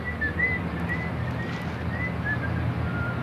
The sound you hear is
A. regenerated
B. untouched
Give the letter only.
B